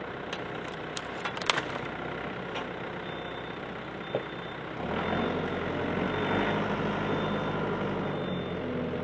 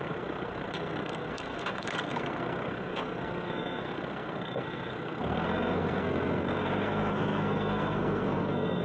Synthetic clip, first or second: second